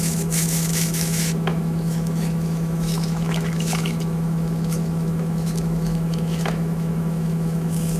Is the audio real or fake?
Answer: fake